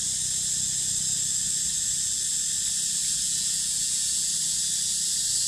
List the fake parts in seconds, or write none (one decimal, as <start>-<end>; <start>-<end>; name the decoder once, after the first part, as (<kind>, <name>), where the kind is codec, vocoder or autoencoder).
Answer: 3.0-4.6 (vocoder, Vocos)